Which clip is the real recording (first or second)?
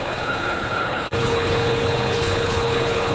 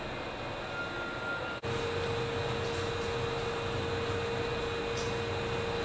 second